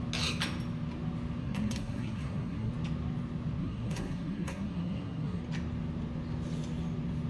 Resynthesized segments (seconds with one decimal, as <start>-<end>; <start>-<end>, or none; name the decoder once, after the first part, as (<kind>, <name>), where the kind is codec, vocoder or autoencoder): 1.4-2.7 (codec, SNAC); 3.6-5.4